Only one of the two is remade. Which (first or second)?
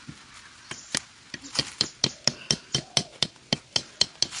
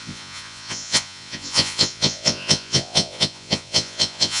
second